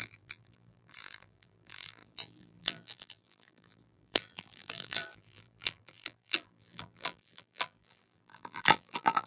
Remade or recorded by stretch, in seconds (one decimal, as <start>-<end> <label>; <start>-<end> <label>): 0.0-9.3 remade